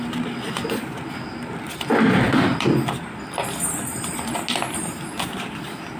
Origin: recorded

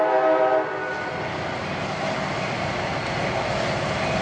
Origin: recorded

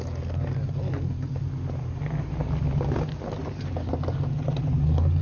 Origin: recorded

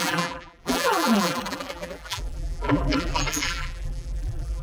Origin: remade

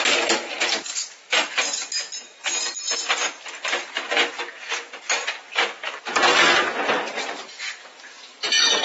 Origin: recorded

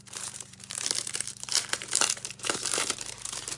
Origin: remade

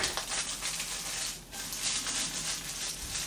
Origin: recorded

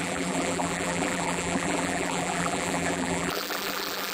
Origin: remade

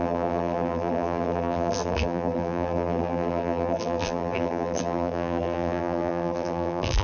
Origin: remade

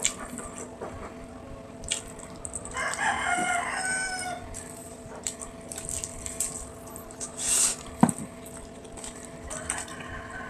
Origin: remade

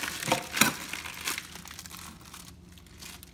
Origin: recorded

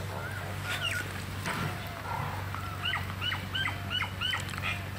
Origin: recorded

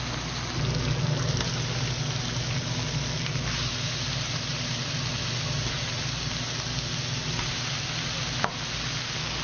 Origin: recorded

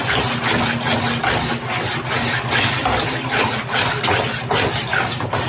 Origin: recorded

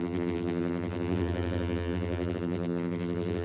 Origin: remade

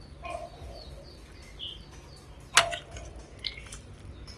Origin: recorded